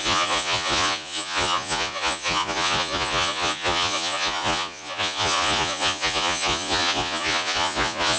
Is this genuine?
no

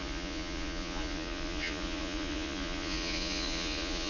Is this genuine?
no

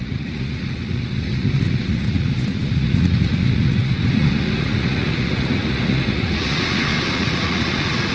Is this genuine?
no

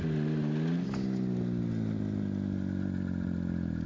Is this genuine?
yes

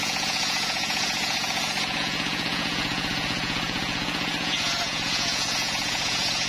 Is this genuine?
no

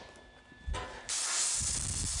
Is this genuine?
yes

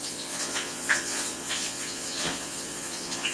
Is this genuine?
no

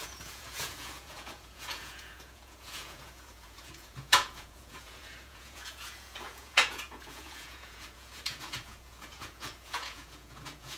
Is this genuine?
no